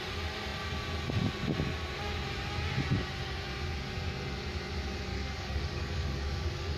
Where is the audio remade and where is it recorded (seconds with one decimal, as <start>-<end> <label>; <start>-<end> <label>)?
0.0-5.1 recorded; 5.1-6.8 remade

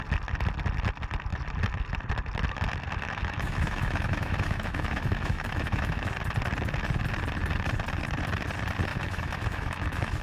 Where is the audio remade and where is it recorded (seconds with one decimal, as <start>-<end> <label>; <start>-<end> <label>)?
0.0-3.2 recorded; 3.2-6.1 remade; 6.1-8.9 recorded; 8.9-10.2 remade

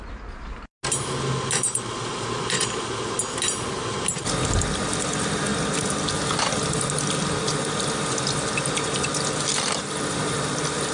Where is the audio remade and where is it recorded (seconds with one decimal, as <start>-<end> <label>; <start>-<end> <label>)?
0.0-10.9 recorded

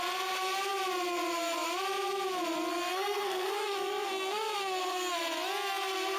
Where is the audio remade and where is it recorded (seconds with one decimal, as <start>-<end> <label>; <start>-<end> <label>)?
0.0-2.7 recorded; 2.7-5.2 remade; 5.2-6.2 recorded

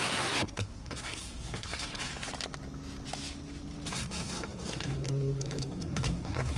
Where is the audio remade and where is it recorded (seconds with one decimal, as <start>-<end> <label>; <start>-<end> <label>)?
0.0-2.1 remade; 2.1-3.9 recorded; 3.9-6.6 remade